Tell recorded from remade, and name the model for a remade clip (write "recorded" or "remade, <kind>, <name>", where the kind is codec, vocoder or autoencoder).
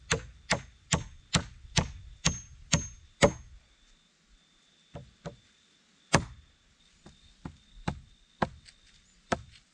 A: recorded